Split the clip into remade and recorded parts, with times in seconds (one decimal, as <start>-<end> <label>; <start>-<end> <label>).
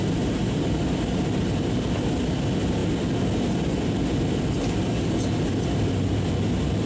0.0-6.9 recorded